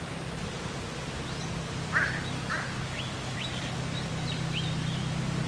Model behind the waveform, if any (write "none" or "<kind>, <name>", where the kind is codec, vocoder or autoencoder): none